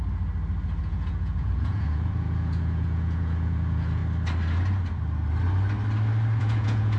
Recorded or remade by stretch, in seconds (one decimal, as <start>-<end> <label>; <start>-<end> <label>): 0.0-0.8 recorded; 0.8-4.0 remade; 4.0-6.4 recorded; 6.4-7.0 remade